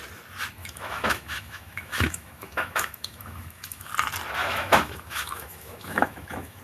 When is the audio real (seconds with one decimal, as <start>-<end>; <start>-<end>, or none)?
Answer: 0.0-0.6; 3.9-4.4